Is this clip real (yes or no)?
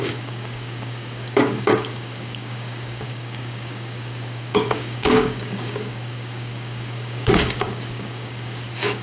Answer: no